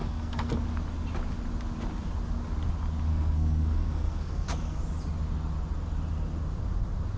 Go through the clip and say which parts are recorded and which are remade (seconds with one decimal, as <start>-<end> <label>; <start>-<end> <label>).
0.0-0.5 remade; 0.5-3.1 recorded; 3.1-4.8 remade; 4.8-7.2 recorded